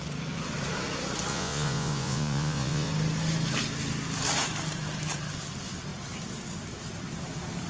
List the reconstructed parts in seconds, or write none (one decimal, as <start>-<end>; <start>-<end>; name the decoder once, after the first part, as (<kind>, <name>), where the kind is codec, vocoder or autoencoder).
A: 1.3-2.9 (vocoder, Vocos)